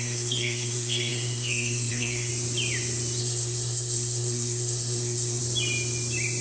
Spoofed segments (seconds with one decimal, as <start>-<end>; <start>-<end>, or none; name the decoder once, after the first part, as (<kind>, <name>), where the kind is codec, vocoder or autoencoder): 0.0-2.3 (codec, SNAC); 3.2-5.4